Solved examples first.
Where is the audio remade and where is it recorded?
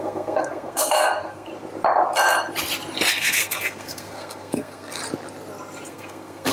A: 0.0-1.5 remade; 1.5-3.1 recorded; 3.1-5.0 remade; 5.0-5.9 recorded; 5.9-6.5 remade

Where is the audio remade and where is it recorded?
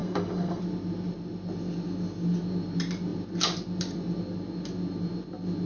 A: 0.0-0.6 remade; 0.6-5.7 recorded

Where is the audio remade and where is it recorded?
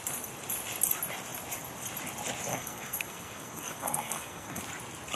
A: 0.0-2.5 recorded; 2.5-4.6 remade; 4.6-5.2 recorded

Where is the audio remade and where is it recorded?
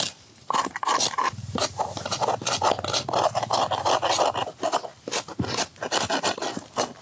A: 0.0-1.6 recorded; 1.6-2.2 remade; 2.2-7.0 recorded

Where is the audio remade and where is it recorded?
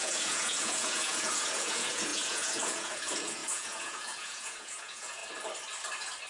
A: 0.0-5.2 remade; 5.2-6.3 recorded